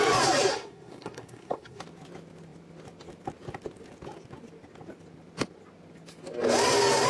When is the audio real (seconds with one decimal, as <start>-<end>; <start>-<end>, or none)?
0.0-0.5; 1.8-7.1